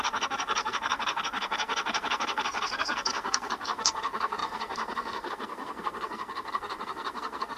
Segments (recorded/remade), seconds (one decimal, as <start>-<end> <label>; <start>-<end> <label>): 0.0-7.6 remade